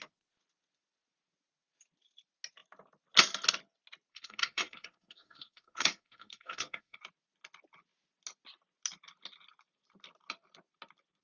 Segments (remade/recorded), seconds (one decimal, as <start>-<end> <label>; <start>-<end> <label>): 0.0-4.1 recorded; 4.1-7.0 remade; 7.0-11.2 recorded